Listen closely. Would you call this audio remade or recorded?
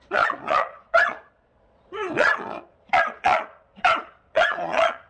remade